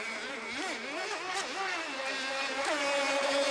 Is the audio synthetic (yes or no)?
no